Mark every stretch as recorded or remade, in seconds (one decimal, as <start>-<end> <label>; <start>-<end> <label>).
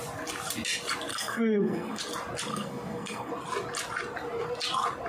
0.0-1.1 recorded; 1.1-2.0 remade; 2.0-2.5 recorded; 2.5-3.3 remade; 3.3-5.1 recorded